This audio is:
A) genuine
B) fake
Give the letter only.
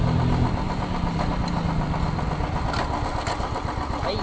A